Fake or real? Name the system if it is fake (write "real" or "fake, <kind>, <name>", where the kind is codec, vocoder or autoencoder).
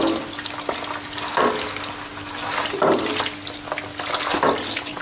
real